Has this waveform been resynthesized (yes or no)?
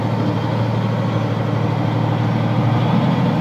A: no